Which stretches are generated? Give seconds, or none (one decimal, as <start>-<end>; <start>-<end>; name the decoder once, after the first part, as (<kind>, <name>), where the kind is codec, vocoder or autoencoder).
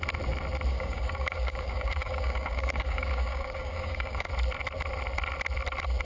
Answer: 0.7-4.3 (codec, DAC)